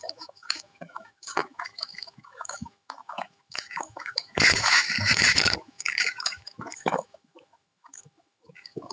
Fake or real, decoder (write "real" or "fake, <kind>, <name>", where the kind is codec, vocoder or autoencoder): fake, autoencoder, DAC-VAE